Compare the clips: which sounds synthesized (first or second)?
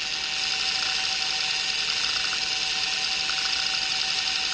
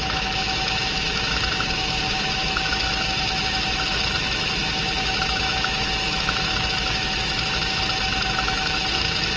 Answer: second